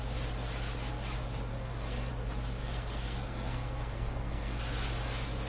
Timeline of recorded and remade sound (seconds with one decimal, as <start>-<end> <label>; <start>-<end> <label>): 0.0-1.5 recorded; 1.5-2.1 remade; 2.1-2.6 recorded; 2.6-4.6 remade; 4.6-5.5 recorded